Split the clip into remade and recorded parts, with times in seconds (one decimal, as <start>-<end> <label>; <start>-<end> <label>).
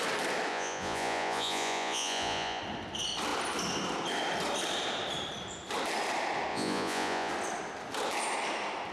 0.0-0.5 recorded; 0.5-2.6 remade; 2.6-6.5 recorded; 6.5-7.3 remade; 7.3-8.9 recorded